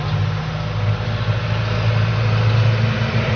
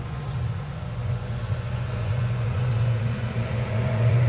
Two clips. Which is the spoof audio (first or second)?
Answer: second